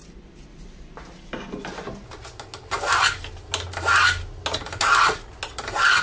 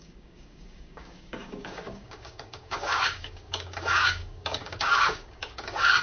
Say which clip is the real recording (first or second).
first